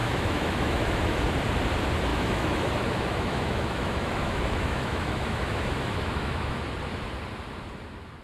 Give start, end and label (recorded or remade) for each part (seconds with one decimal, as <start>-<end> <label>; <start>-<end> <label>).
0.0-1.2 remade; 1.2-2.1 recorded; 2.1-6.6 remade; 6.6-8.2 recorded